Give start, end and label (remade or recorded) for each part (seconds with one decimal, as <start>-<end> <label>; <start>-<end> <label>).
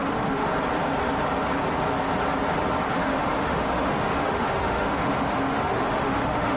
0.0-0.5 remade; 0.5-2.9 recorded; 2.9-6.6 remade